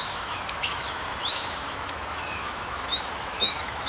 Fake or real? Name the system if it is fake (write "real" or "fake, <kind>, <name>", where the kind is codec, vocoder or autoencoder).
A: fake, autoencoder, DAC-VAE